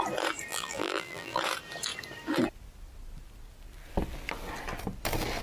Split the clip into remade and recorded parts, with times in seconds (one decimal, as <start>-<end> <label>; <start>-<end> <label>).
0.0-0.5 recorded; 0.5-1.4 remade; 1.4-5.4 recorded